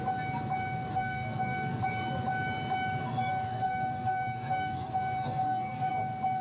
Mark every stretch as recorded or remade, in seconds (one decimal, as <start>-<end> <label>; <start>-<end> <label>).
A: 0.0-0.9 recorded; 0.9-1.8 remade; 1.8-3.0 recorded; 3.0-5.9 remade; 5.9-6.4 recorded

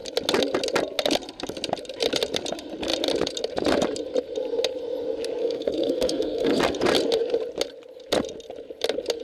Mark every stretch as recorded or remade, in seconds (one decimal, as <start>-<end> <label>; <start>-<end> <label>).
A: 0.0-5.4 recorded; 5.4-6.6 remade; 6.6-9.2 recorded

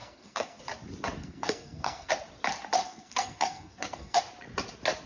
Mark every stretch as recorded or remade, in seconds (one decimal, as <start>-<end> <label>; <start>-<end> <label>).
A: 0.0-0.6 remade; 0.6-1.2 recorded; 1.2-2.1 remade; 2.1-2.8 recorded; 2.8-4.2 remade; 4.2-5.1 recorded

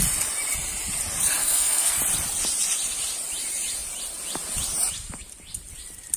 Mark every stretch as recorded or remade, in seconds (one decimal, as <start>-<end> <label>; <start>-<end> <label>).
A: 0.0-1.4 recorded; 1.4-2.0 remade; 2.0-6.2 recorded

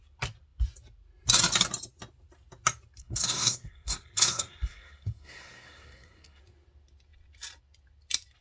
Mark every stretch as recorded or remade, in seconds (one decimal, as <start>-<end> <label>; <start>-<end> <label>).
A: 0.0-3.0 recorded; 3.0-6.4 remade; 6.4-8.4 recorded

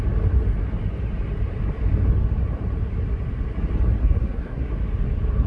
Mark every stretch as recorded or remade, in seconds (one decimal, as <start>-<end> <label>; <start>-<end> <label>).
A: 0.0-4.0 recorded; 4.0-4.7 remade; 4.7-5.5 recorded

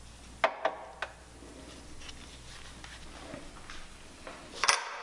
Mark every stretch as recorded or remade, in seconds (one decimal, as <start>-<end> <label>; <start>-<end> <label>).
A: 0.0-5.0 recorded

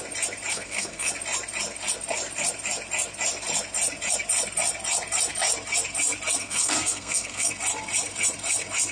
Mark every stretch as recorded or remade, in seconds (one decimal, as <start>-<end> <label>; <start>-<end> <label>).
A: 0.0-0.5 recorded; 0.5-1.1 remade; 1.1-6.4 recorded; 6.4-7.5 remade; 7.5-8.9 recorded